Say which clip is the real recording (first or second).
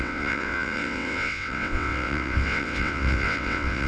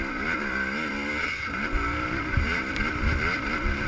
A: second